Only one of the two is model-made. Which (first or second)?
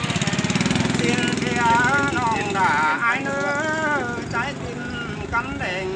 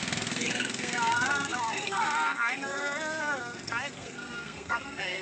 second